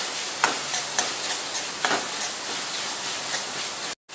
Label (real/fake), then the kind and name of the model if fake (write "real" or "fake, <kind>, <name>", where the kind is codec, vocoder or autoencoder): real